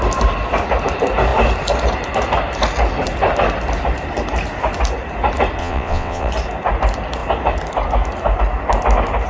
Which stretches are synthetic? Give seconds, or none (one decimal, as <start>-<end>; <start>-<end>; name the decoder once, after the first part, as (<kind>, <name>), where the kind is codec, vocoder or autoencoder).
5.6-6.3 (vocoder, WaveNeXt)